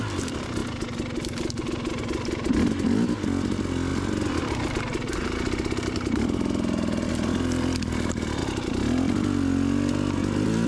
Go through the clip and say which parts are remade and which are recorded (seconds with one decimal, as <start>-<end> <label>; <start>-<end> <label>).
0.0-10.7 recorded

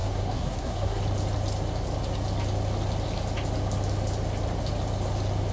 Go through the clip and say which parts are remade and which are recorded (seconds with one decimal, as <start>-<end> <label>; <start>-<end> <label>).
0.0-1.0 remade; 1.0-5.5 recorded

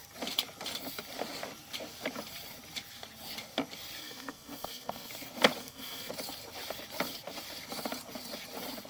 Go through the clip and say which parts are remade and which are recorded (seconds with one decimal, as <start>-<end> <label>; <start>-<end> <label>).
0.0-4.0 recorded; 4.0-5.1 remade; 5.1-5.6 recorded; 5.6-6.1 remade; 6.1-8.9 recorded

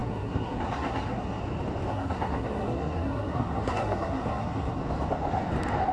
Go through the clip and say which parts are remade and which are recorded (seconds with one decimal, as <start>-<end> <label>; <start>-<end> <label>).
0.0-1.4 remade; 1.4-1.9 recorded; 1.9-4.8 remade; 4.8-5.9 recorded

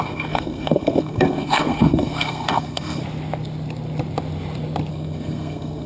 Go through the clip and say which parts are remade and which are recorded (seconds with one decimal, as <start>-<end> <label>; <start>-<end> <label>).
0.0-3.0 remade; 3.0-4.9 recorded; 4.9-5.9 remade

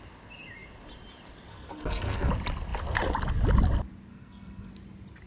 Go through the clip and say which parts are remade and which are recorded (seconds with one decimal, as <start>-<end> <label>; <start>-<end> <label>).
0.0-1.5 recorded; 1.5-2.3 remade; 2.3-4.1 recorded; 4.1-4.7 remade; 4.7-5.3 recorded